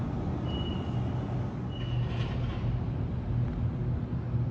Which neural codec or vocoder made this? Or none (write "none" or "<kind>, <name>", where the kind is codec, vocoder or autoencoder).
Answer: none